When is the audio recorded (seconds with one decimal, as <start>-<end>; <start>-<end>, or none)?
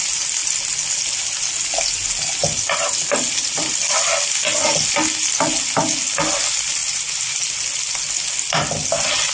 0.0-9.3